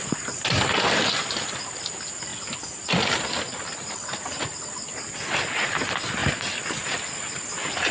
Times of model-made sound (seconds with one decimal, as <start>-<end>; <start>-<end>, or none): 6.2-7.5